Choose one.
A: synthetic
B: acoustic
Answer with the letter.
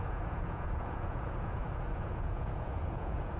A